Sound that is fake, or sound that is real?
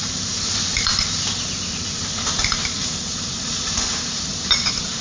fake